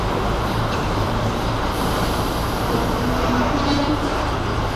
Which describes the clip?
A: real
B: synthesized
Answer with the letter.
B